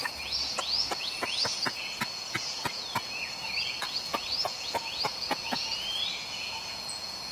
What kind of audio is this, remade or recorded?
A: remade